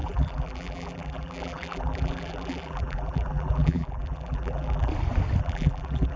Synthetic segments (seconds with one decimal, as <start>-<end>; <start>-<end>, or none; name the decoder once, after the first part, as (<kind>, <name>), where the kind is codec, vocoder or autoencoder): 0.0-4.9 (vocoder, BigVGAN v2); 5.4-6.2